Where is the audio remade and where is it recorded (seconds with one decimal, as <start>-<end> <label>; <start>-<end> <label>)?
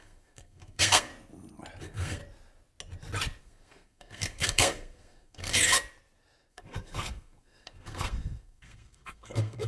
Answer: 0.0-1.1 remade; 1.1-1.8 recorded; 1.8-2.2 remade; 2.2-3.4 recorded; 3.4-5.8 remade; 5.8-6.5 recorded; 6.5-9.7 remade